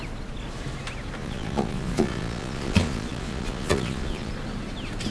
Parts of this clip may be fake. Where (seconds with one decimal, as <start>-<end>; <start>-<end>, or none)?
1.2-4.3